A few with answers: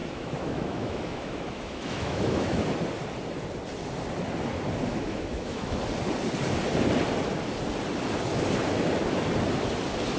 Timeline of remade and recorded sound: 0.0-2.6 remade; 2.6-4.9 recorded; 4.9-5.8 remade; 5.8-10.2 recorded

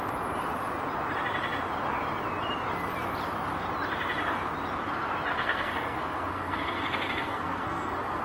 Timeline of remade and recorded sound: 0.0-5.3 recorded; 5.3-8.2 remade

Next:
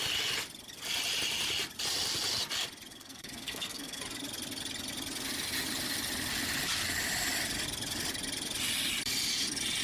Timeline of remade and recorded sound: 0.0-2.9 recorded; 2.9-4.0 remade; 4.0-9.8 recorded

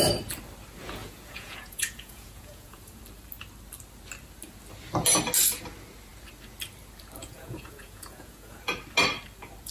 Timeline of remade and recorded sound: 0.0-1.0 recorded; 1.0-3.0 remade; 3.0-7.2 recorded; 7.2-8.6 remade; 8.6-9.7 recorded

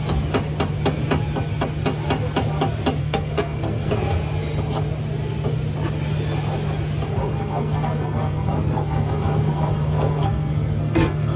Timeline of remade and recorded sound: 0.0-3.0 recorded; 3.0-4.2 remade; 4.2-7.1 recorded; 7.1-11.4 remade

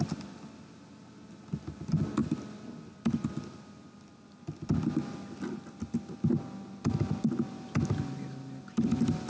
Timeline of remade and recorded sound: 0.0-9.3 recorded